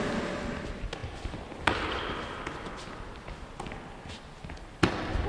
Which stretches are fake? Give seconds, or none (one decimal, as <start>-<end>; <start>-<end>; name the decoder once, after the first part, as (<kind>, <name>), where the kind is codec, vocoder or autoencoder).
1.0-2.7 (vocoder, BigVGAN v2)